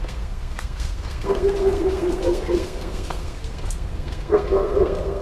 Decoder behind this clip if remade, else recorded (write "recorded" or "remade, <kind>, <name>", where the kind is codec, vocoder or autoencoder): remade, codec, SNAC